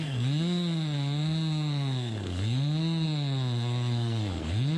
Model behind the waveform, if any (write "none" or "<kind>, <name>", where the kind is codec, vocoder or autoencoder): codec, SNAC